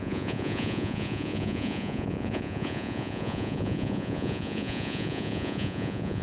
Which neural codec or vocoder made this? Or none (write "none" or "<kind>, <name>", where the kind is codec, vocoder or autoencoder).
vocoder, Vocos